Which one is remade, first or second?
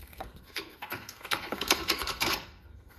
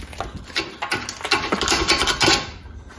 first